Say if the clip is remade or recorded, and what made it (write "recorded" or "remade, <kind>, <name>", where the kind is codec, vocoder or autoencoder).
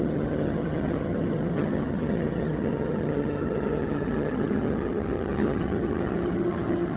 remade, vocoder, HiFi-GAN